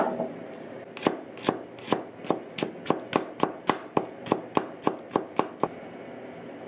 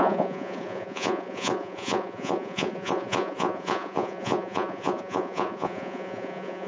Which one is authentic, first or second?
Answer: first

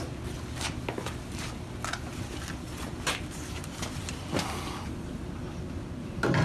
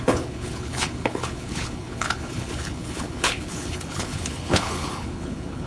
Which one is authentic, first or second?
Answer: first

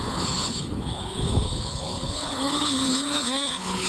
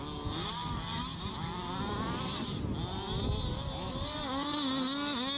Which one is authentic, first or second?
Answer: second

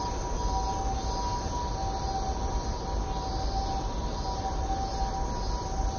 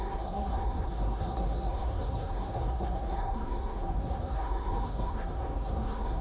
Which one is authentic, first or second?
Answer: first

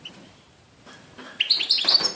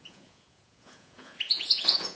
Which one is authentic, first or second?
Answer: first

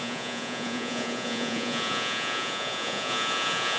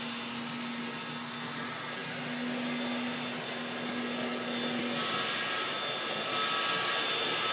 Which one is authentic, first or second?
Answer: second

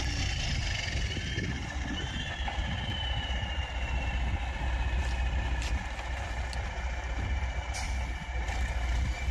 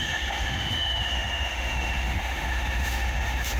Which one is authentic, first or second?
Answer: first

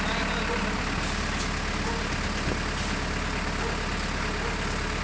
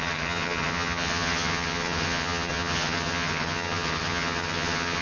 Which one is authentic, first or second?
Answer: first